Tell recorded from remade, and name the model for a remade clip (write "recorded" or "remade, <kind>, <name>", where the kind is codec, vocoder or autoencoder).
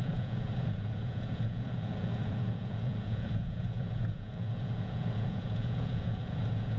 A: remade, vocoder, Vocos